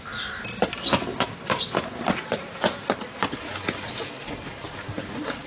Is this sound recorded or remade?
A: recorded